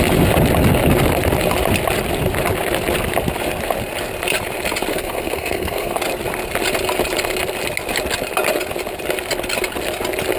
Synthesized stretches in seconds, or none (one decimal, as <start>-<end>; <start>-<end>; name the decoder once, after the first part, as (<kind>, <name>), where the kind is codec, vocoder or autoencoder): 4.9-6.0 (codec, SNAC)